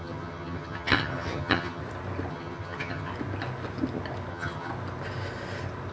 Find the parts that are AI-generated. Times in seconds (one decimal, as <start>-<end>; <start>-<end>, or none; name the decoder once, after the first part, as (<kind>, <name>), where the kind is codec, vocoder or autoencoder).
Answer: 0.0-1.8 (vocoder, HiFi-GAN); 2.3-3.1; 4.3-4.7